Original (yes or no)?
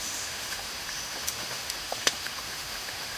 no